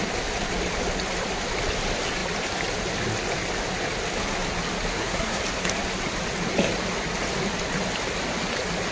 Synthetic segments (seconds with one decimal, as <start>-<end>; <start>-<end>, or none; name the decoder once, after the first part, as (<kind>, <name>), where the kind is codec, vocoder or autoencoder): 4.9-5.4 (codec, SNAC)